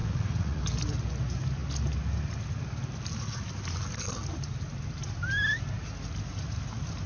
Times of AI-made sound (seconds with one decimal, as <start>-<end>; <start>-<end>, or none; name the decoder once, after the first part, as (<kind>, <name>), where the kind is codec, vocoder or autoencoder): 0.0-0.6 (vocoder, Vocos)